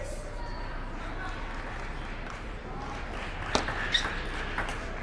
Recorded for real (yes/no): yes